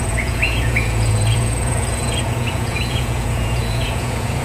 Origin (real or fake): fake